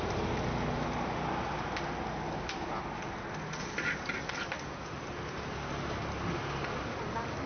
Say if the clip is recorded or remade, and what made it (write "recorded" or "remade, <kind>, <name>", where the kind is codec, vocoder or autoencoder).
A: recorded